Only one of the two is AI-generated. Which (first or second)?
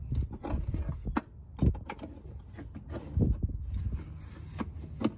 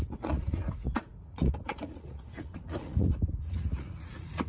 second